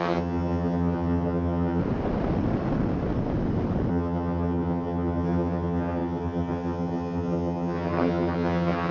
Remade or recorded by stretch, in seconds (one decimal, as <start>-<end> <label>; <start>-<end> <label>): 0.0-1.8 remade; 1.8-3.9 recorded; 3.9-8.9 remade